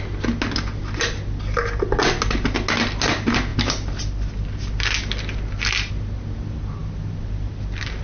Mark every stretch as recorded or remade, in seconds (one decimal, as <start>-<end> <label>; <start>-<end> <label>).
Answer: 0.0-8.0 recorded